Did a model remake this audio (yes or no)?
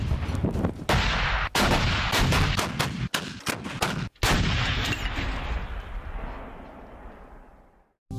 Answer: no